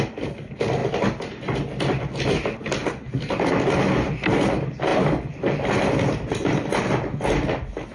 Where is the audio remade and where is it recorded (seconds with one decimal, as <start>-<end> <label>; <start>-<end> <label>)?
0.0-7.9 recorded